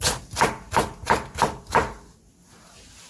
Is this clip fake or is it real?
real